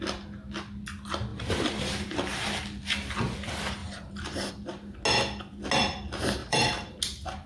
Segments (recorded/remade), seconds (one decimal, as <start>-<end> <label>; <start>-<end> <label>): 0.0-1.3 recorded; 1.3-2.5 remade; 2.5-3.8 recorded; 3.8-4.5 remade; 4.5-6.4 recorded; 6.4-7.0 remade; 7.0-7.5 recorded